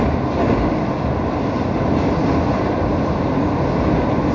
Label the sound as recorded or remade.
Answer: recorded